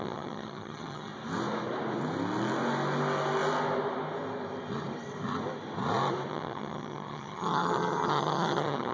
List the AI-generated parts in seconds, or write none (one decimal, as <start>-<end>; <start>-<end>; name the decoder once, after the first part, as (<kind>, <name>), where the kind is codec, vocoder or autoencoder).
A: 0.0-1.1 (vocoder, HiFi-GAN); 6.3-8.9